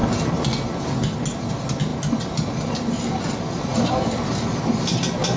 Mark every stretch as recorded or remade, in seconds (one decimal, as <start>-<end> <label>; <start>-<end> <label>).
0.0-1.9 recorded; 1.9-2.7 remade; 2.7-3.7 recorded; 3.7-4.2 remade; 4.2-5.4 recorded